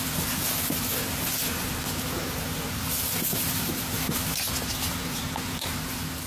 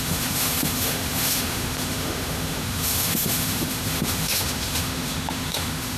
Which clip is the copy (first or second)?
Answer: second